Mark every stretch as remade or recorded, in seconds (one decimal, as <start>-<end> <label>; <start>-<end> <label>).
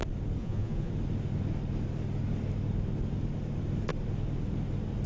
0.0-0.4 recorded; 0.4-0.9 remade; 0.9-5.1 recorded